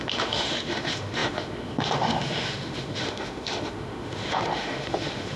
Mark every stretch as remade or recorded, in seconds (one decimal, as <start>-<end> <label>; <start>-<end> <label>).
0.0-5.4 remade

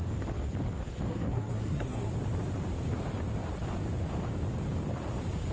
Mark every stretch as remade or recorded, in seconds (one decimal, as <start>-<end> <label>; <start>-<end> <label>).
0.0-1.1 recorded; 1.1-2.1 remade; 2.1-5.5 recorded

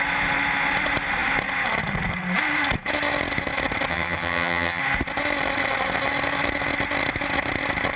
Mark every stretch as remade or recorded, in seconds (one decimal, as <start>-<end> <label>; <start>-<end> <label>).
0.0-3.9 recorded; 3.9-4.8 remade; 4.8-8.0 recorded

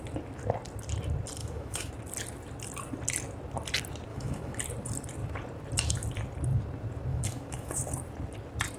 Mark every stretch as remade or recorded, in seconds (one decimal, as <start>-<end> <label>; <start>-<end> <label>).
0.0-1.4 recorded; 1.4-1.9 remade; 1.9-4.1 recorded; 4.1-4.6 remade; 4.6-7.1 recorded; 7.1-7.7 remade; 7.7-8.8 recorded

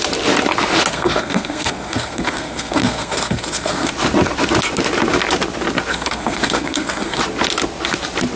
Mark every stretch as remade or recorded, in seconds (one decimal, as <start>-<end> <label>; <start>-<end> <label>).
0.0-0.9 recorded; 0.9-3.9 remade; 3.9-5.9 recorded; 5.9-7.2 remade; 7.2-8.4 recorded

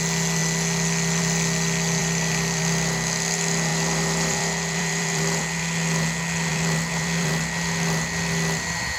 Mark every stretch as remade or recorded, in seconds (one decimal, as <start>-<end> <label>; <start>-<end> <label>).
0.0-2.0 recorded; 2.0-2.6 remade; 2.6-3.7 recorded; 3.7-5.6 remade; 5.6-6.5 recorded; 6.5-7.3 remade; 7.3-9.0 recorded

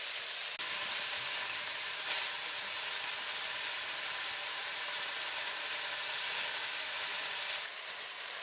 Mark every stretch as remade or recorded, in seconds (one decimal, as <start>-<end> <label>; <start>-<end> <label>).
0.0-4.6 recorded; 4.6-5.3 remade; 5.3-8.4 recorded

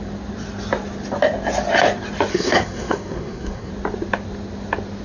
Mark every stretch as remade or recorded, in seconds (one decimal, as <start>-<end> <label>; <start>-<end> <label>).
0.0-2.3 recorded; 2.3-3.7 remade; 3.7-5.0 recorded